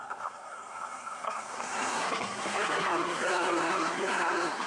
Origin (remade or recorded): remade